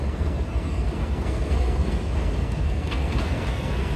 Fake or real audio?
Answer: fake